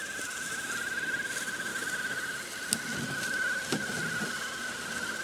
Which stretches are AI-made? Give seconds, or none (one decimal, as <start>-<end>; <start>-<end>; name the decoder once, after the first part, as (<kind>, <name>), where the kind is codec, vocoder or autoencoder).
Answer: none